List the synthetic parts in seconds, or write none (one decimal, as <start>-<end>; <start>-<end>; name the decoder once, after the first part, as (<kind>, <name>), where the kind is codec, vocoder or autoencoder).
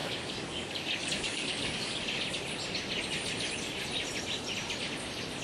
0.0-2.0 (codec, DAC)